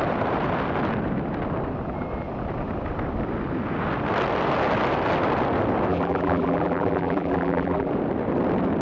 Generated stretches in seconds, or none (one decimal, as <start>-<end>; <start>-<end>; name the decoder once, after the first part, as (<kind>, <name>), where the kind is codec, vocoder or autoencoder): 5.9-7.9 (vocoder, BigVGAN v2)